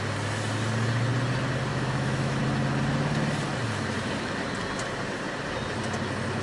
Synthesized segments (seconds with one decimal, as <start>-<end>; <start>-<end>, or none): 1.7-2.4